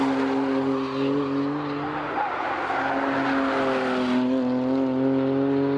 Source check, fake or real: real